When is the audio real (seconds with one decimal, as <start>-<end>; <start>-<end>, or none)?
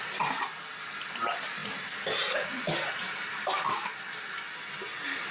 0.0-1.6; 4.2-5.3